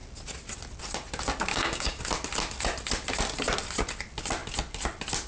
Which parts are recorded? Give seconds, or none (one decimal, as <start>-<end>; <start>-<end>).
0.0-1.5; 2.0-5.3